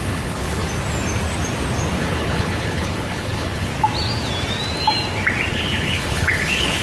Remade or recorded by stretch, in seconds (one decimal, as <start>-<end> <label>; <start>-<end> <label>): 0.0-0.6 remade; 0.6-2.0 recorded; 2.0-3.7 remade; 3.7-5.5 recorded; 5.5-6.8 remade